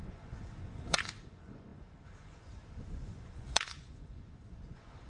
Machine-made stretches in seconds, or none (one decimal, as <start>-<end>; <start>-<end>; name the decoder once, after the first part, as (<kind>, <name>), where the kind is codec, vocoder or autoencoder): 0.0-5.1 (vocoder, Vocos)